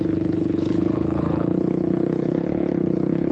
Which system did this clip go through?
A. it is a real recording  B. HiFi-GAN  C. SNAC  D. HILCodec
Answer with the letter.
D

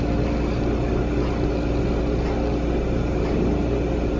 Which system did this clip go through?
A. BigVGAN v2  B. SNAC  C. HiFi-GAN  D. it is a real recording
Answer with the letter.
D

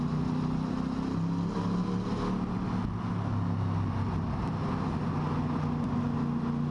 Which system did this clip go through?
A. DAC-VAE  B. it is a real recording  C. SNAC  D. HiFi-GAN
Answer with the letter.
B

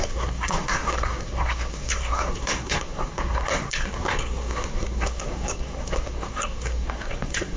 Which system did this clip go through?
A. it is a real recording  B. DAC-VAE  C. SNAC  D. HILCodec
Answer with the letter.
C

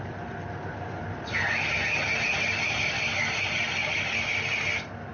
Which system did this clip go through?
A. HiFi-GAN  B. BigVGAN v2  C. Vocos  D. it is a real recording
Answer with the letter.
D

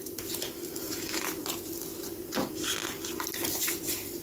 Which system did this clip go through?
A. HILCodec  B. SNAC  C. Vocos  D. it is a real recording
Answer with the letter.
D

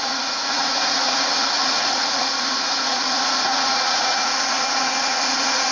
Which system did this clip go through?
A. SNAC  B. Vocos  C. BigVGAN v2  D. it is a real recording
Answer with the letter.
B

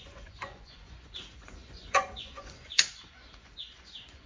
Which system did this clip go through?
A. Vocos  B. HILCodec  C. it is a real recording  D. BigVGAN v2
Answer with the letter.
A